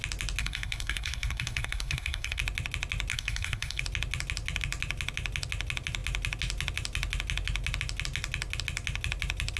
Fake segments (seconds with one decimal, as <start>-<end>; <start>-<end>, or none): 0.4-2.4; 3.1-3.8